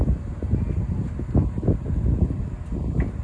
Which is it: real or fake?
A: real